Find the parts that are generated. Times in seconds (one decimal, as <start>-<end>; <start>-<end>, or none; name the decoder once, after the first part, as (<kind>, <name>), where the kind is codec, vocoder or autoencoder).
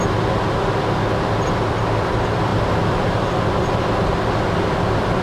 none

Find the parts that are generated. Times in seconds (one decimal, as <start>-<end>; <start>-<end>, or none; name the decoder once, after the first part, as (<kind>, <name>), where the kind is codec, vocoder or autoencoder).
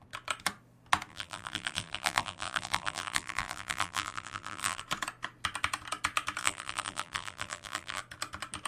1.1-4.8 (vocoder, BigVGAN v2); 6.4-8.0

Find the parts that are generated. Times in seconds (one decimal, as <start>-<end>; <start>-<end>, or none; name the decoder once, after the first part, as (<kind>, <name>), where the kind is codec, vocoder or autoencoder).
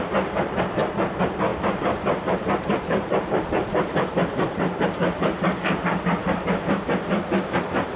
1.5-6.3 (vocoder, BigVGAN v2)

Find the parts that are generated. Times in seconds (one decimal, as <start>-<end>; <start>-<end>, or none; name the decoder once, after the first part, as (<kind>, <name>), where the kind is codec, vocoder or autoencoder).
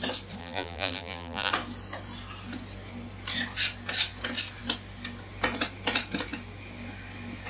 0.4-1.5 (vocoder, BigVGAN v2)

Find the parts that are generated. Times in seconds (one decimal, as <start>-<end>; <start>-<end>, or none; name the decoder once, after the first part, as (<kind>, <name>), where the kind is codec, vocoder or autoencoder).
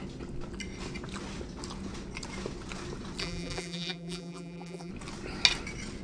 3.2-4.9 (vocoder, BigVGAN v2)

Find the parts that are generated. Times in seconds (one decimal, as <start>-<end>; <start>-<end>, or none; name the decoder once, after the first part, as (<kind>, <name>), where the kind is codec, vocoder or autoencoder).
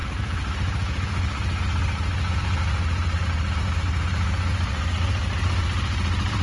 0.0-6.4 (vocoder, BigVGAN v2)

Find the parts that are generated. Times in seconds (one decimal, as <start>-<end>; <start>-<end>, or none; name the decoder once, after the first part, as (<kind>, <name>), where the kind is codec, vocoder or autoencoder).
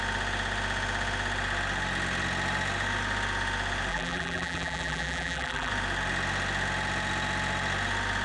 3.9-5.7 (vocoder, BigVGAN v2)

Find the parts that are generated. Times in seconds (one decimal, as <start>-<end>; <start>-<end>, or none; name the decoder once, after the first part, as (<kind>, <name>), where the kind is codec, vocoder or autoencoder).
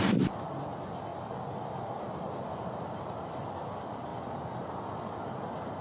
none